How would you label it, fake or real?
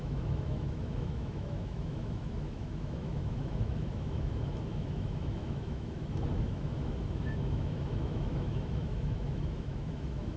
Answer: fake